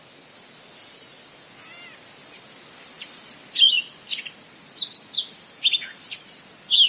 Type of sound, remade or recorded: recorded